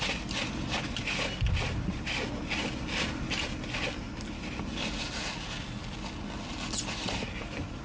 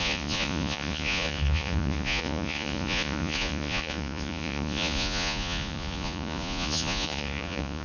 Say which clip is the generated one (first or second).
second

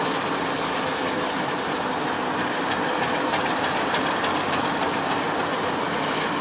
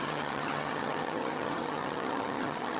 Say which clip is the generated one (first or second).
second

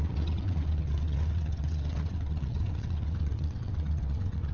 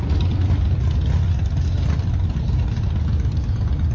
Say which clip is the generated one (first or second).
first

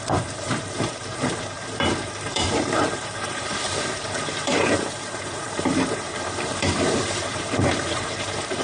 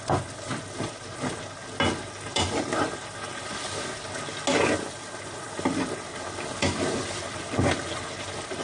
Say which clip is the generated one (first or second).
first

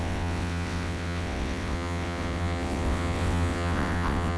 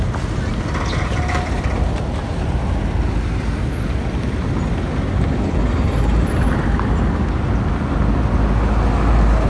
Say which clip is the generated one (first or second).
first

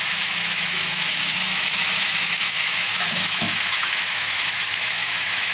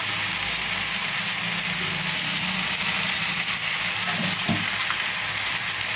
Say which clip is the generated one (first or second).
first